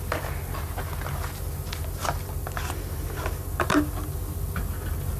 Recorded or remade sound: recorded